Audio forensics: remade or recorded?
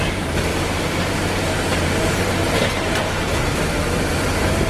remade